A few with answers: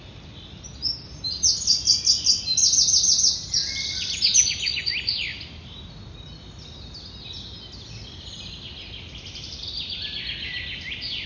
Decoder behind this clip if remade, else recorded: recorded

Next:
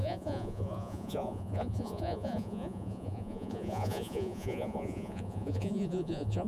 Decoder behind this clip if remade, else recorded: remade, vocoder, Vocos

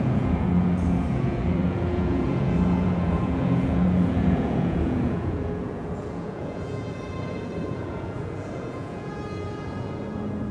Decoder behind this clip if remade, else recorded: remade, vocoder, Vocos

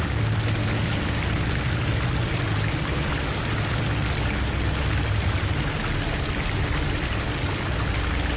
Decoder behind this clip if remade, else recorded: recorded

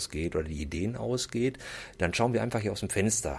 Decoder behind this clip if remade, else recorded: recorded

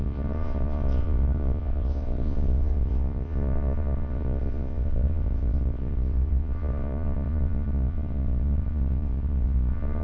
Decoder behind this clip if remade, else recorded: remade, vocoder, Vocos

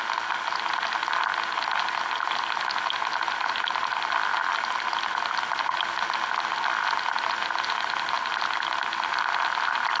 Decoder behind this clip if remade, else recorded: recorded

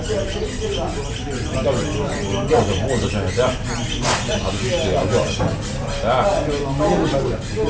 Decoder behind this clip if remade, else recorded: recorded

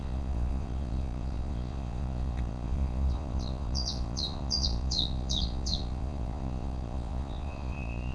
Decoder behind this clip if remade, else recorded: remade, vocoder, Vocos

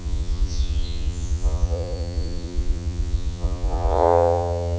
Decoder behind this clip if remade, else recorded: remade, vocoder, Vocos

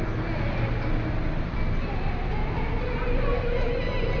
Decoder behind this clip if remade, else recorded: recorded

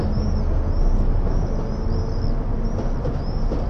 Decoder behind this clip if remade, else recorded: recorded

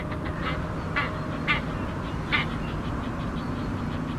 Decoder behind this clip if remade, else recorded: recorded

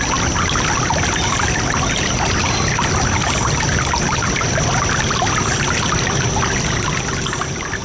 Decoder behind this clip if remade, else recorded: recorded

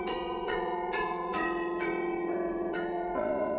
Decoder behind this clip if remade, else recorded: remade, vocoder, Vocos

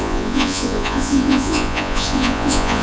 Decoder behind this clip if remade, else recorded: remade, vocoder, Vocos